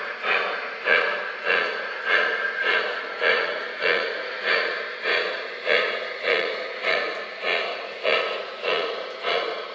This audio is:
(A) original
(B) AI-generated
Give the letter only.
B